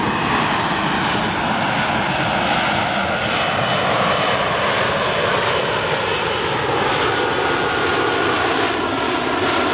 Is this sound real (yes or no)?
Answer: yes